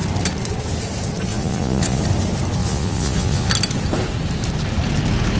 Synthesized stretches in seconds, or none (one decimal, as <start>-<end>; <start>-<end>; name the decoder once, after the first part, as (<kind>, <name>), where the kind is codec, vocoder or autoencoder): 1.3-2.0 (vocoder, Vocos); 2.6-3.5